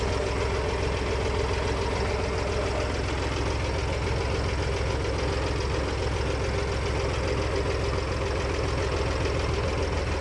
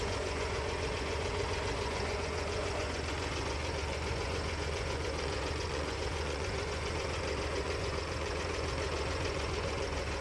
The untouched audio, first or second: first